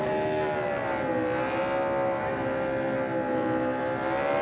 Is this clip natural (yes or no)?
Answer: yes